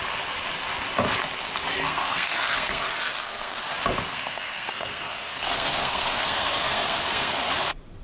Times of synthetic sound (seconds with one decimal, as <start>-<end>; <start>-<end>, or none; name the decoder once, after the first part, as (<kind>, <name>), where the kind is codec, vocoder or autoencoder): 1.9-3.6 (codec, SNAC); 4.1-7.5